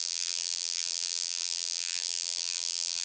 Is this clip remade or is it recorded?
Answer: remade